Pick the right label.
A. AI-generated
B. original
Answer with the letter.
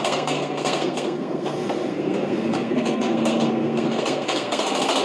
A